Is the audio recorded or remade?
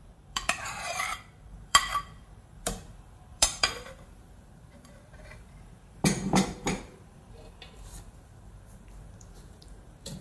remade